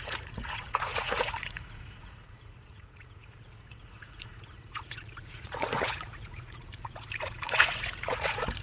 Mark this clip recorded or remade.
remade